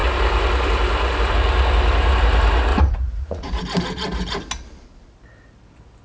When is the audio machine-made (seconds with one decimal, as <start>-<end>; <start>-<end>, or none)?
2.7-3.6